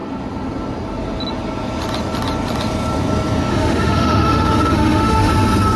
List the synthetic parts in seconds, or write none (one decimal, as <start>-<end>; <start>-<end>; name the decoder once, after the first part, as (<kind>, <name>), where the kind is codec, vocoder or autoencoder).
3.5-5.3 (autoencoder, DAC-VAE)